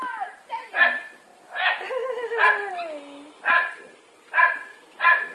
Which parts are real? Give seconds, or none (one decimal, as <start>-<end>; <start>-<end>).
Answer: 0.0-5.3